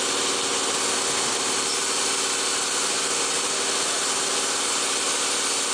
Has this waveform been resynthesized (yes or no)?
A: no